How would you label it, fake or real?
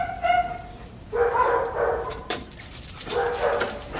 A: fake